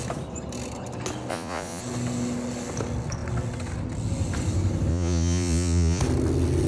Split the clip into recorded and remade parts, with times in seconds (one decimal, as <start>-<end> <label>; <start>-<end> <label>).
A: 0.0-1.3 recorded; 1.3-1.8 remade; 1.8-4.9 recorded; 4.9-6.0 remade; 6.0-6.7 recorded